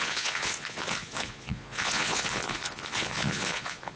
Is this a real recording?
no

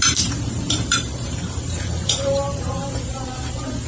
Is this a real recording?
no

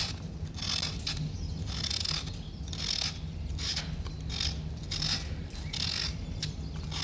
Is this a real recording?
yes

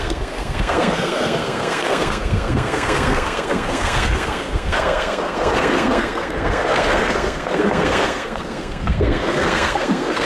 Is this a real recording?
no